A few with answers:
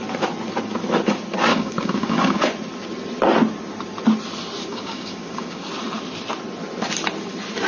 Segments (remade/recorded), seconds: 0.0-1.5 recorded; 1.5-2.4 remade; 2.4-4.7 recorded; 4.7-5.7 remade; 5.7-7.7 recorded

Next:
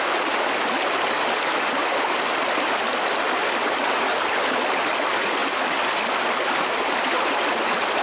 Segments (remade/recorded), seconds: 0.0-8.0 recorded

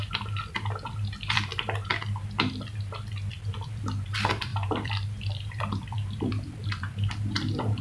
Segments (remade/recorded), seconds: 0.0-1.5 remade; 1.5-3.3 recorded; 3.3-7.8 remade

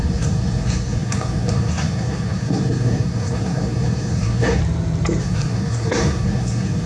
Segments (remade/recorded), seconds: 0.0-4.6 remade; 4.6-5.2 recorded; 5.2-6.9 remade

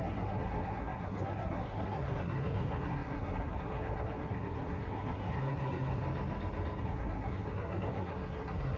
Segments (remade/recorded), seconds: 0.0-6.0 remade; 6.0-6.8 recorded; 6.8-8.8 remade